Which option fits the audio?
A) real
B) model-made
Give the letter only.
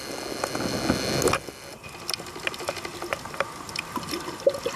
A